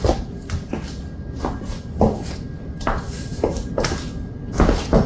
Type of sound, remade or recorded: recorded